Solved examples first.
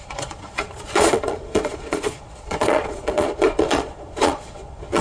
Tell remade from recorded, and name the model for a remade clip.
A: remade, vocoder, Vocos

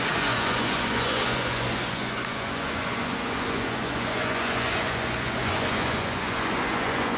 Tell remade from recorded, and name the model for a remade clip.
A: remade, vocoder, Vocos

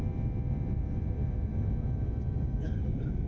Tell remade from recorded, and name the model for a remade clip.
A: recorded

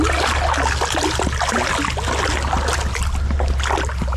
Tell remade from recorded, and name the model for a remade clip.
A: recorded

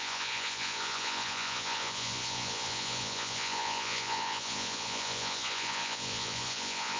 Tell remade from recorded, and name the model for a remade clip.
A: remade, vocoder, Vocos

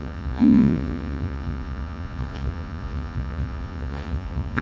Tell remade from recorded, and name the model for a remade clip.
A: remade, vocoder, Vocos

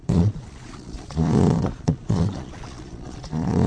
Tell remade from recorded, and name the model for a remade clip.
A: remade, vocoder, Vocos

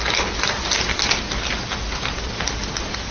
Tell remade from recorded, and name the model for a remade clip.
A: recorded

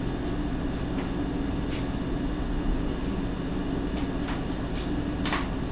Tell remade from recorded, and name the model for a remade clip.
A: recorded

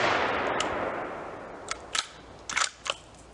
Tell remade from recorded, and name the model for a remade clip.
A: recorded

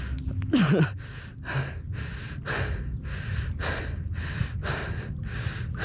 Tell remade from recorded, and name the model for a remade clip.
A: recorded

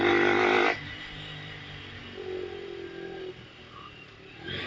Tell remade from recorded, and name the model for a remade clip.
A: recorded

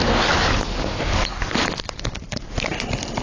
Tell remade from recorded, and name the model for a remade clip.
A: recorded